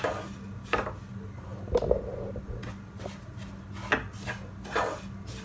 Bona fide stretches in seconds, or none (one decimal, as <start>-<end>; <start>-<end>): 0.0-5.4